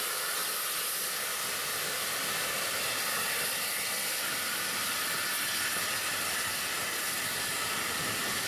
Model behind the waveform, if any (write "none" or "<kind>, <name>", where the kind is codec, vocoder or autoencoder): none